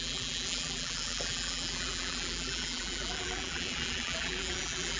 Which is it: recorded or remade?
remade